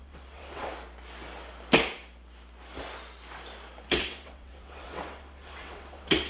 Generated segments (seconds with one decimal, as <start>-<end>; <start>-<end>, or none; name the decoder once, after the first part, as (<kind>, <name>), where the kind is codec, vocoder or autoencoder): 0.0-0.7 (vocoder, WaveNeXt); 3.9-6.3